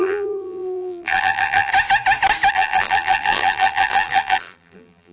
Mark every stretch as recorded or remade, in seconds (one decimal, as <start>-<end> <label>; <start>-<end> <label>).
0.0-1.7 remade; 1.7-2.5 recorded; 2.5-5.1 remade